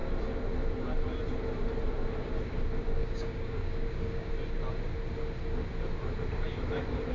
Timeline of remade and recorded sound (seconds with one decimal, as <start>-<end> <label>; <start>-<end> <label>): 0.0-3.0 recorded; 3.0-4.3 remade; 4.3-7.1 recorded